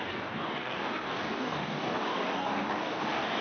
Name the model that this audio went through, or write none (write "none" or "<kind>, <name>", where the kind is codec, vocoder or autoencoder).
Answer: codec, DAC